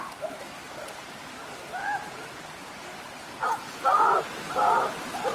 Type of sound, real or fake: fake